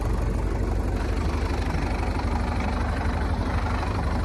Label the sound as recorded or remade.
recorded